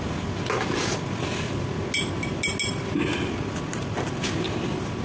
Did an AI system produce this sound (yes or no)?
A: no